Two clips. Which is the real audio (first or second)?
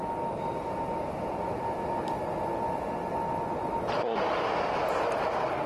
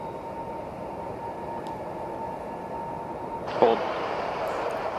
first